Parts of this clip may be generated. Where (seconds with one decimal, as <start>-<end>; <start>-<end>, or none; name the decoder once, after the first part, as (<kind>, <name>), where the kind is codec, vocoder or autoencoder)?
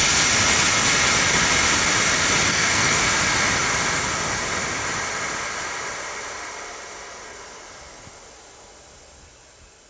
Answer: 2.5-3.0 (codec, SNAC)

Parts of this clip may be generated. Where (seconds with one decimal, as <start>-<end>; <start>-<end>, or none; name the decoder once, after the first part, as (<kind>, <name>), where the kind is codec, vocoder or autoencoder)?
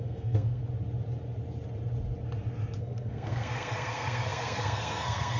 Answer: 0.0-0.6 (codec, SNAC); 2.8-5.4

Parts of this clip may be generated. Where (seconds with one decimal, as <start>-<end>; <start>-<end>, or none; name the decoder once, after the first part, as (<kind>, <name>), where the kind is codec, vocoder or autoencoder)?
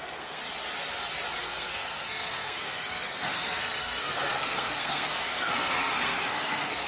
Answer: 0.0-0.4 (codec, SNAC); 1.4-6.9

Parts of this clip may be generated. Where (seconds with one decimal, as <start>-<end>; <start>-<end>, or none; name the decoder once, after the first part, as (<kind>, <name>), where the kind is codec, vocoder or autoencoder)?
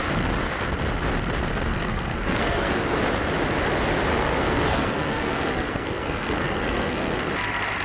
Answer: 1.7-3.0 (codec, SNAC); 4.1-7.2